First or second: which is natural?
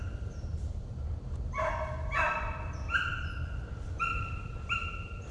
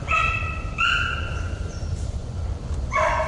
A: first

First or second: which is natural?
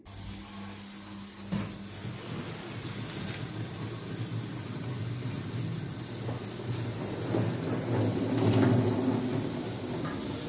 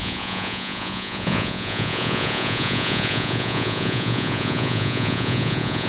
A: first